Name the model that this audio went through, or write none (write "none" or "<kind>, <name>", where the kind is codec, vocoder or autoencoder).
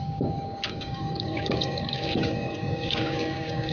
codec, DAC